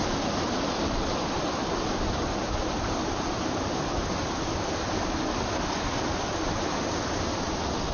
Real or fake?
real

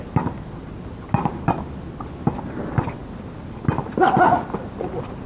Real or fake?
real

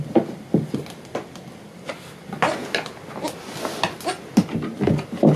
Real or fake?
real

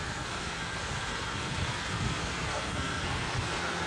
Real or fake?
fake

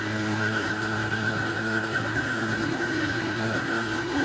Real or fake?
fake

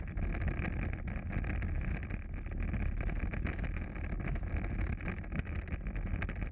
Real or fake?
real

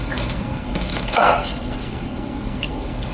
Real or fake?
fake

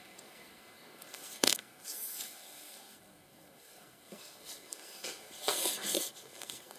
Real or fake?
fake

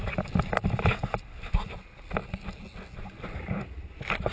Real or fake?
real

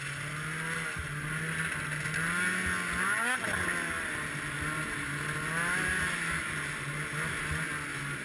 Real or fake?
real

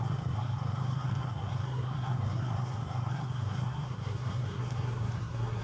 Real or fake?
fake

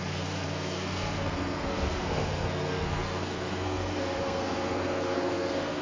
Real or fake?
fake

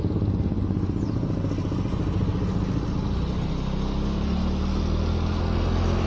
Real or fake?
real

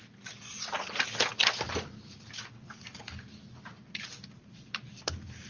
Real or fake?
real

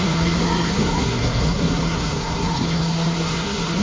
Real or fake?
fake